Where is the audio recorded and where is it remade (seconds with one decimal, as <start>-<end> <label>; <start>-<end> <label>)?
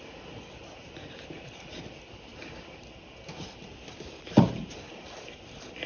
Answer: 0.0-5.9 recorded